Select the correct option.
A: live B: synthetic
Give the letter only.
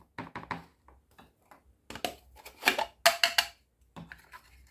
A